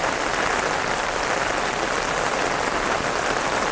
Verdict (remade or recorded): recorded